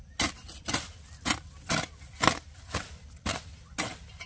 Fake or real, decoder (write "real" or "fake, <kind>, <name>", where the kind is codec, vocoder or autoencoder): real